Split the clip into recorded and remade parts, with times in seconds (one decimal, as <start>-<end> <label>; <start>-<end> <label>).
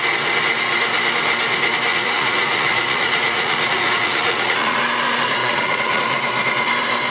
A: 0.0-1.9 recorded; 1.9-4.8 remade; 4.8-5.4 recorded; 5.4-6.0 remade; 6.0-7.1 recorded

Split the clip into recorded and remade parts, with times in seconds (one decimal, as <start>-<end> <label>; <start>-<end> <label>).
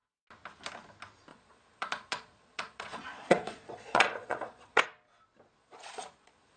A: 0.0-1.3 recorded; 1.3-4.8 remade; 4.8-5.6 recorded; 5.6-6.6 remade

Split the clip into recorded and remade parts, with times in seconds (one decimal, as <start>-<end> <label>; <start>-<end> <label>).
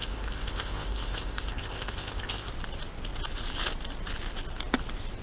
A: 0.0-2.5 remade; 2.5-5.2 recorded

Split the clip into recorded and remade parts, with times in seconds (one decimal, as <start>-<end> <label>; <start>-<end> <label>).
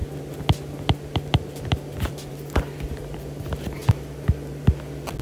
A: 0.0-5.2 recorded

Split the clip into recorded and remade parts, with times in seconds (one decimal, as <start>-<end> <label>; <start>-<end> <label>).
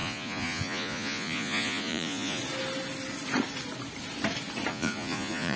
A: 0.0-2.4 remade; 2.4-4.7 recorded; 4.7-5.6 remade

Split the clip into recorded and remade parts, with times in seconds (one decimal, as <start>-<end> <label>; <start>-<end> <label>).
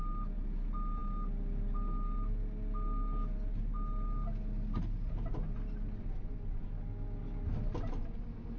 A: 0.0-8.6 recorded